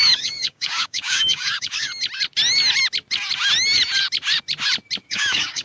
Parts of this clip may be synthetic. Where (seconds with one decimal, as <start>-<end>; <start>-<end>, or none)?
0.0-1.9; 5.1-5.6